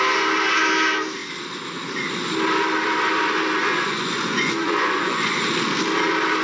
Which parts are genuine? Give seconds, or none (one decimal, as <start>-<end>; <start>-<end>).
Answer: 0.0-3.6; 5.4-6.4

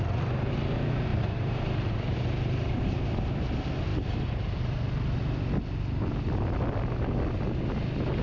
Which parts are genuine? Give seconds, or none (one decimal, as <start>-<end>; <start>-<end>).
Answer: 0.0-1.1; 3.0-8.2

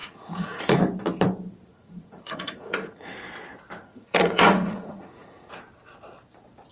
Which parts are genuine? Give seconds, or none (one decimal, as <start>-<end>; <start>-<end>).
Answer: 0.8-1.7; 3.1-3.8; 5.5-6.7

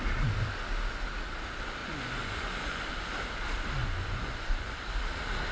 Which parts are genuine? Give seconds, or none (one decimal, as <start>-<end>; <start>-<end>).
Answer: 0.0-1.8; 2.9-3.8; 4.8-5.5